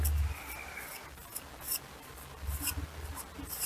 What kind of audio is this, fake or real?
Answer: real